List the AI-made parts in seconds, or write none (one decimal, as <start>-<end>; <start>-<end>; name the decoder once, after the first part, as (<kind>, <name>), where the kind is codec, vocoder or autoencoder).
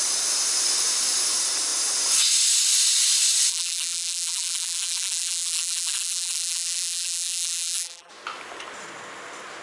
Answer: 3.5-8.1 (vocoder, BigVGAN v2)